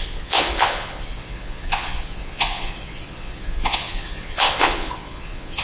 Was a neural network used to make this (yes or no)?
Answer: yes